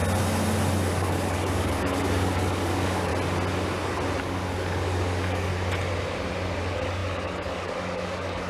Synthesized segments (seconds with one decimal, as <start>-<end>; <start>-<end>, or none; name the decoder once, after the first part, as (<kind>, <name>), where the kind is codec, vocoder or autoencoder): 0.9-3.1 (codec, DAC); 4.2-5.5; 6.6-8.5

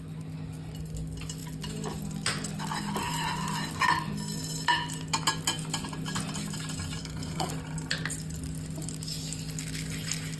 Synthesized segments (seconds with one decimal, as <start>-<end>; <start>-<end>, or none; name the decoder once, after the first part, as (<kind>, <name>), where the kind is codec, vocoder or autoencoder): 7.0-7.5 (codec, SNAC)